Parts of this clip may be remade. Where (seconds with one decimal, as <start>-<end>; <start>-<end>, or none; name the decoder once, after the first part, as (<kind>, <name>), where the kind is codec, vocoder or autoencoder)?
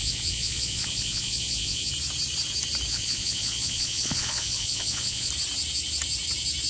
0.0-1.9 (vocoder, Vocos); 2.9-5.3